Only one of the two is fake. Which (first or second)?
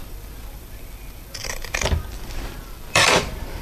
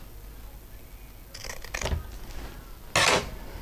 first